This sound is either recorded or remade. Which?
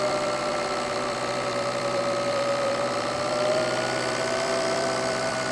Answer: remade